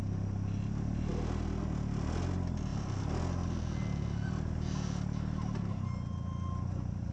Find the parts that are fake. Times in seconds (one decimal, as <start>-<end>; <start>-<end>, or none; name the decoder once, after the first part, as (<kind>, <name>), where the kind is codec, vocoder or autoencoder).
none